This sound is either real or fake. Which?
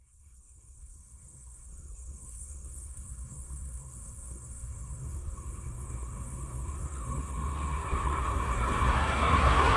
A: fake